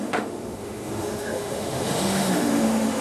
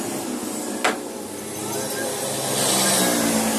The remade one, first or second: first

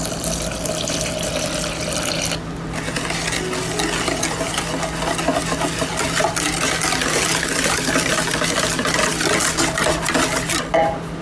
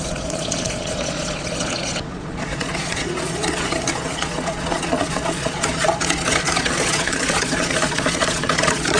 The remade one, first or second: second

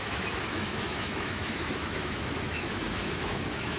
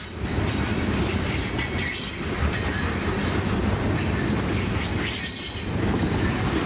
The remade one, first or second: first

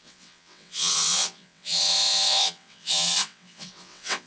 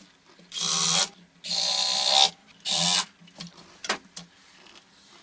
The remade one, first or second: first